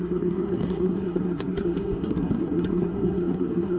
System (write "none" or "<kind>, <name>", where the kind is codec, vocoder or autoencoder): codec, SNAC